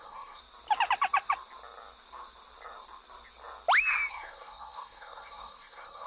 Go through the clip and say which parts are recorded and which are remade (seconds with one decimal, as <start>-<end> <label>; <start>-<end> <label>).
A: 0.0-0.4 remade; 0.4-4.1 recorded; 4.1-6.1 remade